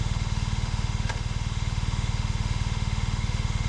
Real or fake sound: fake